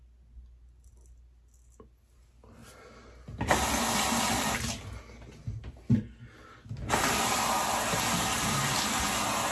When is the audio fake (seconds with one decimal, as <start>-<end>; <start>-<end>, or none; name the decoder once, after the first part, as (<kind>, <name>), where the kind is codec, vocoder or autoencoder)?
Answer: none